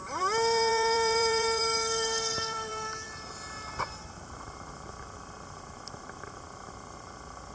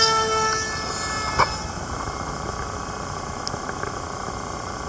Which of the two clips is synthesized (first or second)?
first